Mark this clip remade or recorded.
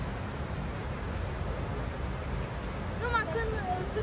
recorded